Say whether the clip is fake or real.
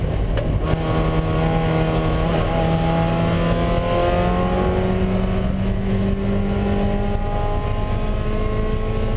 real